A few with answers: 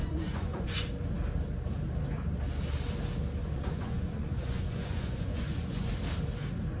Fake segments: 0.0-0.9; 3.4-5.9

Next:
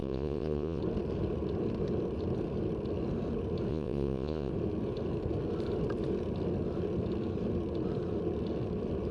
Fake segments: 0.0-0.8; 3.7-4.5

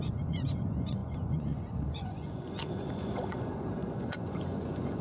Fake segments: 0.0-5.0